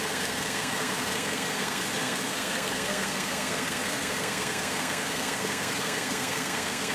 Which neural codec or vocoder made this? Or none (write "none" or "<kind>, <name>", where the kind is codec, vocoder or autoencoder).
codec, SNAC